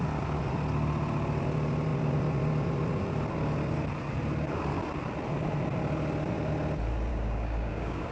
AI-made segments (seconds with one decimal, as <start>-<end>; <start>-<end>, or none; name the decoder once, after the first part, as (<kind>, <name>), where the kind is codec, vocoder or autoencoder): 7.1-8.1 (codec, DAC)

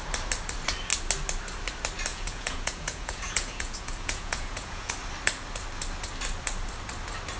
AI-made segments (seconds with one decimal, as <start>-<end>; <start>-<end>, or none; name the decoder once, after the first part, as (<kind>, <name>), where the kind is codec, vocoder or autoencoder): 2.1-4.9 (vocoder, Vocos)

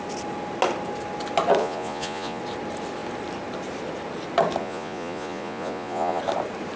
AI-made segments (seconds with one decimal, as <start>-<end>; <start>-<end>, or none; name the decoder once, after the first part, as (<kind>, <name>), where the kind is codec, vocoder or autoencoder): 1.6-2.4 (vocoder, Vocos); 4.6-6.2

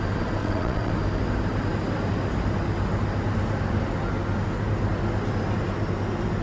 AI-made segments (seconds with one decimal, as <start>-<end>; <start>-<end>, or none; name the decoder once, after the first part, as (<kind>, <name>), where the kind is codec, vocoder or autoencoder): 0.4-0.9 (vocoder, WaveNeXt)

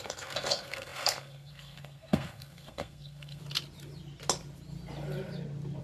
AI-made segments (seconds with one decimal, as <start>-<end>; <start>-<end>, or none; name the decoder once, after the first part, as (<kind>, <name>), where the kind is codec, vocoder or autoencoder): 0.0-3.4 (codec, SNAC)

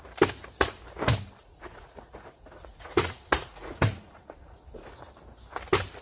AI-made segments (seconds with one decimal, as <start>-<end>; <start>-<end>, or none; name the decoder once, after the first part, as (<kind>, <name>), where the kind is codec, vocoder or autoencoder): 1.4-5.0 (vocoder, Vocos)

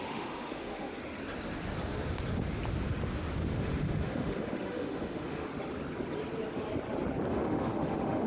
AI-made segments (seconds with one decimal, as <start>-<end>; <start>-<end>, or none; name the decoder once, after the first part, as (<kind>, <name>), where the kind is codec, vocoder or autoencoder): 0.0-0.9 (autoencoder, DAC-VAE); 3.5-5.5; 7.3-8.3